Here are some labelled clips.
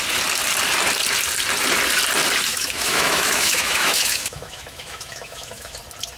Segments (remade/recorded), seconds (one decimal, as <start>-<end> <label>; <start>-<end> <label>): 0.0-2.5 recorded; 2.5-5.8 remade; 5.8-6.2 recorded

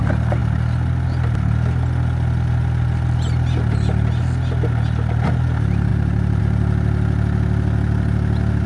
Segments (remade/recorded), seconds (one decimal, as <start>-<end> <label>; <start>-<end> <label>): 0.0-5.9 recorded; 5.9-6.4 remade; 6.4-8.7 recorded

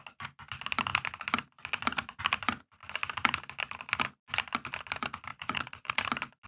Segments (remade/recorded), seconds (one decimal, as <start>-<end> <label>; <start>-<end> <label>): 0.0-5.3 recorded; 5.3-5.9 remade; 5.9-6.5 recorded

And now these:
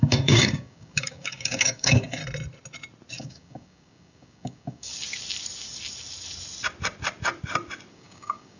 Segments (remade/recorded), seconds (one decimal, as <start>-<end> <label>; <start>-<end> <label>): 0.0-2.2 remade; 2.2-3.2 recorded; 3.2-4.9 remade; 4.9-7.9 recorded; 7.9-8.6 remade

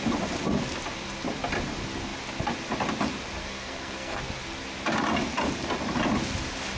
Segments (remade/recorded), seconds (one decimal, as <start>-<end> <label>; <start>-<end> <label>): 0.0-3.4 recorded; 3.4-4.2 remade; 4.2-6.8 recorded

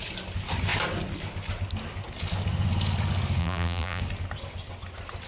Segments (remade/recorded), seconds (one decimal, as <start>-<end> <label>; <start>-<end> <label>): 0.0-3.4 recorded; 3.4-4.0 remade; 4.0-5.3 recorded